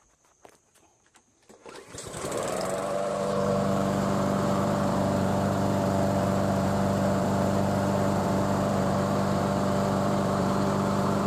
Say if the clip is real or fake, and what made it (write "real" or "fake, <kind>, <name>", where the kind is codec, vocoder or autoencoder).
fake, vocoder, BigVGAN v2